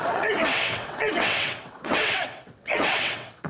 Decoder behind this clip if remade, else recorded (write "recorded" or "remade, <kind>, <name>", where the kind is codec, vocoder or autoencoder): remade, vocoder, WaveNeXt